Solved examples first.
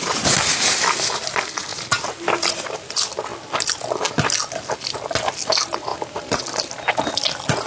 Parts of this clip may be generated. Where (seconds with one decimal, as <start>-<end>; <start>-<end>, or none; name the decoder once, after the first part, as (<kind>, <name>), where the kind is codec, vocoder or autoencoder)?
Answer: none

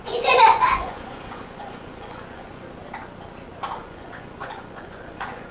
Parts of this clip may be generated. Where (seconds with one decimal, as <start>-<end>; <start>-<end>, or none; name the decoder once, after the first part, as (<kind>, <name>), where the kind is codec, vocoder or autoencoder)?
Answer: 0.0-2.8 (vocoder, Vocos); 3.8-5.5

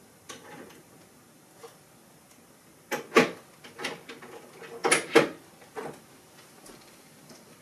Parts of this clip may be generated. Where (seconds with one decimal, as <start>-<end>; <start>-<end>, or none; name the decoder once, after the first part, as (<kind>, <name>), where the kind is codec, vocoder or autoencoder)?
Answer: none